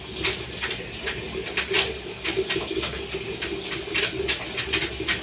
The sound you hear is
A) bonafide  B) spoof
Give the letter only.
A